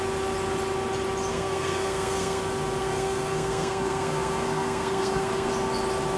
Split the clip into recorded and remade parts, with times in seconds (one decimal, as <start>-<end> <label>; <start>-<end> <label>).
0.0-1.3 recorded; 1.3-2.4 remade; 2.4-2.8 recorded; 2.8-5.5 remade; 5.5-6.2 recorded